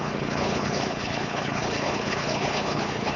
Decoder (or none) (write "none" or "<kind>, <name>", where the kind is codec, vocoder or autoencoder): codec, HILCodec